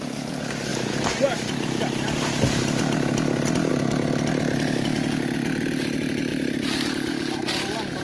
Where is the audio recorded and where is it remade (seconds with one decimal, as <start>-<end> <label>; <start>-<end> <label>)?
0.0-8.0 recorded